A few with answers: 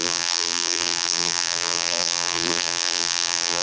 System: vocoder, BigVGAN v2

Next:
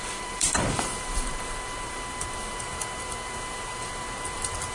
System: vocoder, BigVGAN v2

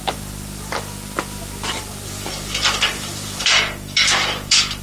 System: vocoder, BigVGAN v2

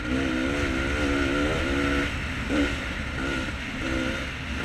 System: none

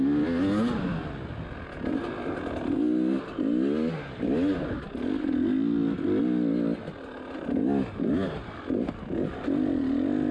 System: none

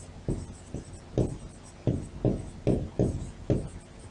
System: none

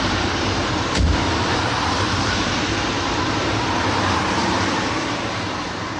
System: vocoder, BigVGAN v2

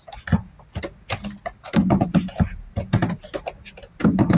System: none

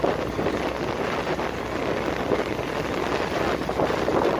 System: none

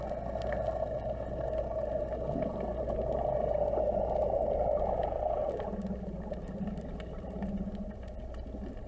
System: none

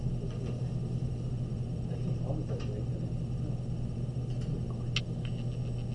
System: none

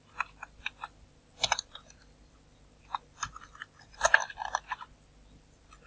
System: none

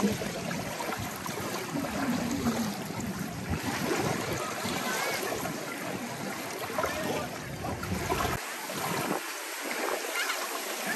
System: none